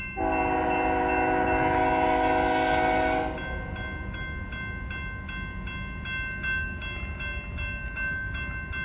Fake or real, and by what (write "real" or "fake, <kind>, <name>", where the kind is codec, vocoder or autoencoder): real